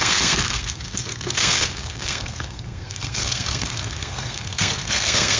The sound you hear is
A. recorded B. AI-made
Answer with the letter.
B